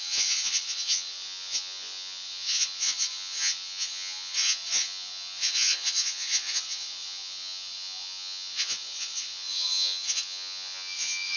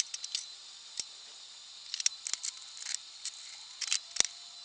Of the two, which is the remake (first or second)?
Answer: first